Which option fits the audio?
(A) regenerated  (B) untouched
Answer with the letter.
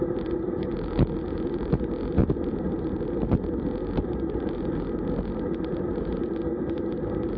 B